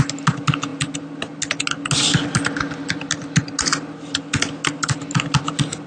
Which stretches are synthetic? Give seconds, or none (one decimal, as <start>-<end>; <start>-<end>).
none